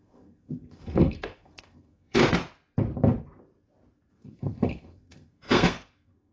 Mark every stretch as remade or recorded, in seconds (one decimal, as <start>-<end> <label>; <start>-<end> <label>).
0.0-2.2 remade; 2.2-4.1 recorded; 4.1-6.3 remade